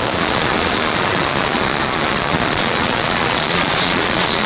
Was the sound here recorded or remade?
remade